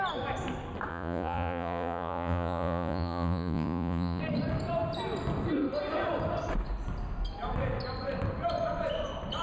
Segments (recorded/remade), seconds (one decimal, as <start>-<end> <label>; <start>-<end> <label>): 0.0-0.9 recorded; 0.9-4.2 remade; 4.2-9.4 recorded